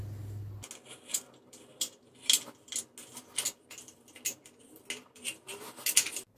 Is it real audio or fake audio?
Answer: real